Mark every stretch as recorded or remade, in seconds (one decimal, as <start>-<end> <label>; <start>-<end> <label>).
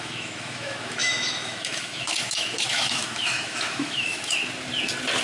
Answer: 0.0-4.4 remade; 4.4-5.2 recorded